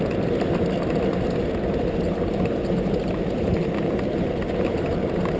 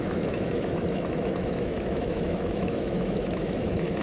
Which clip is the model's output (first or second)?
second